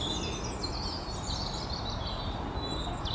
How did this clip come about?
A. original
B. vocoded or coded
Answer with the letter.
A